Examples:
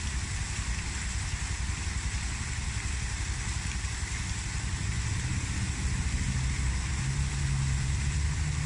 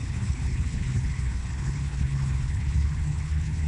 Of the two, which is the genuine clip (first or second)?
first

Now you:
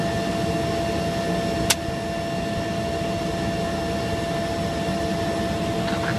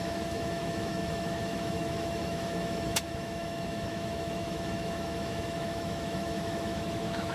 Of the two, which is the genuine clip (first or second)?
first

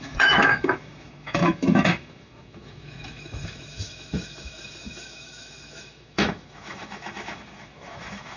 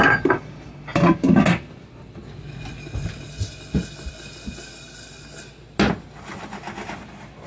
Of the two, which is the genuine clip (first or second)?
second